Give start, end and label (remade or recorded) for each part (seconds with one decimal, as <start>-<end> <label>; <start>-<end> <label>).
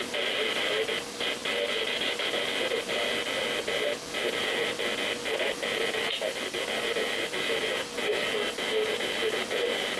0.0-10.0 recorded